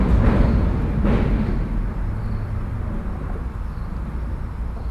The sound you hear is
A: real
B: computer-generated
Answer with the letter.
A